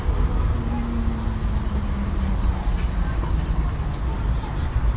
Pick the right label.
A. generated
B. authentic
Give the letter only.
B